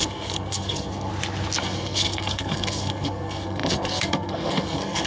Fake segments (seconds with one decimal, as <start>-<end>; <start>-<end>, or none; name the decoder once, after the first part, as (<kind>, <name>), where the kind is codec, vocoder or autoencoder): 0.0-1.1 (codec, SNAC); 1.6-5.1